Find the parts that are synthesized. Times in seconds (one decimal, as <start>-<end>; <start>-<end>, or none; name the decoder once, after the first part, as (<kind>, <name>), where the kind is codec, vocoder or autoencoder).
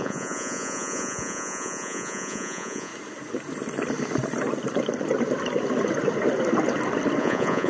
0.0-2.9 (vocoder, Vocos); 7.2-7.7